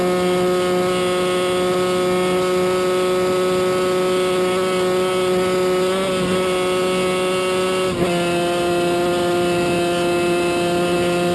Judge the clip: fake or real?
real